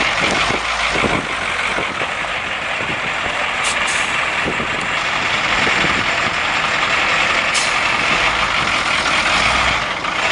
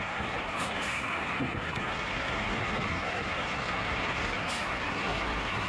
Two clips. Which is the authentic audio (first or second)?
first